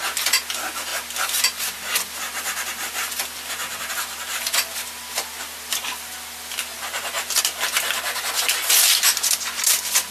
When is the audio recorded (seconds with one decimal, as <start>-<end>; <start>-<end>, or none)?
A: 0.0-10.1